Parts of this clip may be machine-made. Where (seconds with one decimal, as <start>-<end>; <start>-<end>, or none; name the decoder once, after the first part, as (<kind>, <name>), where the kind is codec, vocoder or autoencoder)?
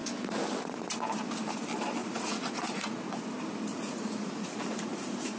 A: 2.0-3.2 (vocoder, Vocos); 3.7-5.4